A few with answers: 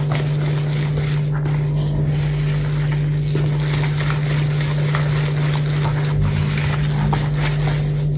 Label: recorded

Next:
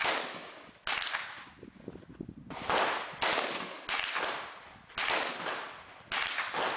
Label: recorded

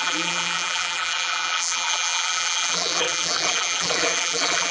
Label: remade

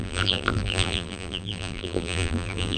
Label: remade